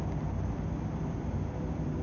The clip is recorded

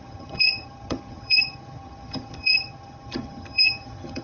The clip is remade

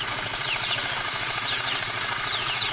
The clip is remade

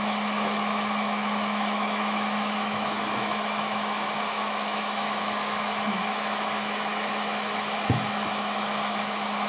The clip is remade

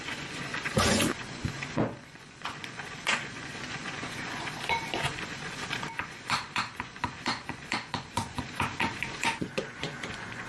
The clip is remade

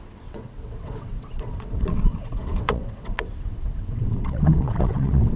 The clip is remade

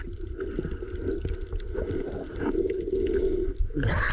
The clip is recorded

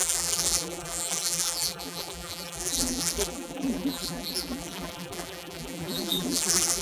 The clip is remade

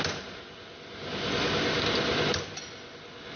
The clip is recorded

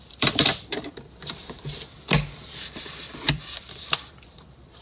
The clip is remade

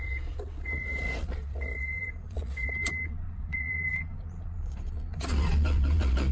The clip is remade